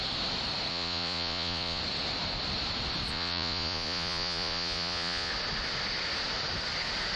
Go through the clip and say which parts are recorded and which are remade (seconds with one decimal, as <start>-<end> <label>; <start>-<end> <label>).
0.0-0.7 recorded; 0.7-1.8 remade; 1.8-3.1 recorded; 3.1-5.3 remade; 5.3-7.2 recorded

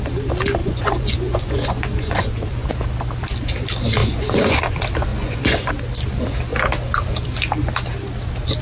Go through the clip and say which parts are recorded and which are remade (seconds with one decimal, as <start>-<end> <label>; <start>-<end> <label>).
0.0-0.6 recorded; 0.6-2.7 remade; 2.7-4.0 recorded; 4.0-4.6 remade; 4.6-5.1 recorded; 5.1-5.7 remade; 5.7-8.6 recorded